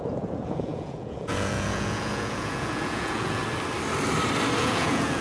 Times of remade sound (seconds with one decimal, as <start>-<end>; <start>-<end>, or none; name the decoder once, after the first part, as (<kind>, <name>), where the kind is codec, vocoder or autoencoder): 0.0-3.4 (vocoder, Vocos); 4.6-5.2